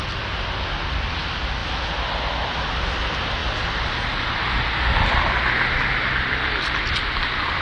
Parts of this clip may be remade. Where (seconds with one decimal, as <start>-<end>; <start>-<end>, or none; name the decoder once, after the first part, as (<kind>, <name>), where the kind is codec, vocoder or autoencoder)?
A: none

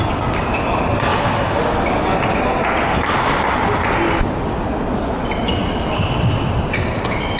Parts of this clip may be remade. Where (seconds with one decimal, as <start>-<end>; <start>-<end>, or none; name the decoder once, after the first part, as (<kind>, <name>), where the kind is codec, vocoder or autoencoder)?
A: none